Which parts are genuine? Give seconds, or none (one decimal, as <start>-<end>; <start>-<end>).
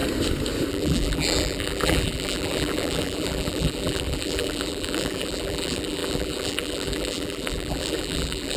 0.0-0.7